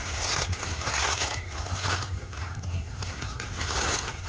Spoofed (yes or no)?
yes